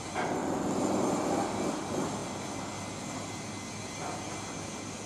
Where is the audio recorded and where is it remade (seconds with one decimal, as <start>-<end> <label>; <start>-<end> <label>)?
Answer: 0.0-5.1 recorded